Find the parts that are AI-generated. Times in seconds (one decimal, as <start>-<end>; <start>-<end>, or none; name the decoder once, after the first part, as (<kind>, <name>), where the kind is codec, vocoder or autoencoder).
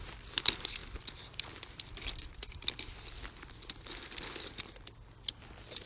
none